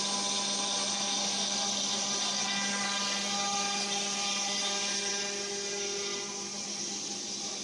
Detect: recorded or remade recorded